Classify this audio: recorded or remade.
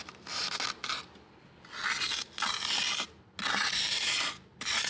recorded